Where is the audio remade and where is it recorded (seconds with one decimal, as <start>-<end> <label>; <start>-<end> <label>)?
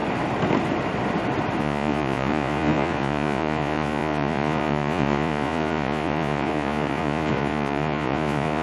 0.0-1.6 recorded; 1.6-8.6 remade